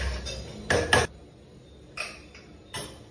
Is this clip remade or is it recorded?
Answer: recorded